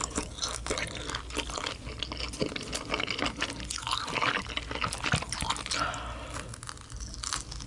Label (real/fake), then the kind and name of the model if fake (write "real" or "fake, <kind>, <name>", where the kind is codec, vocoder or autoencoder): real